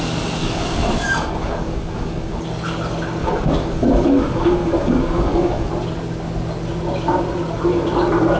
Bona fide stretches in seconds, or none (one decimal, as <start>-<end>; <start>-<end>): 0.0-0.4; 2.4-3.2; 5.7-8.4